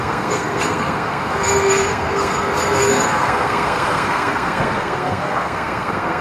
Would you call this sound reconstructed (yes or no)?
yes